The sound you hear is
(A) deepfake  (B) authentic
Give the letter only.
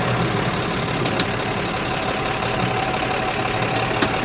B